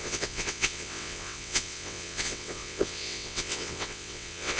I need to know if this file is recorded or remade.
remade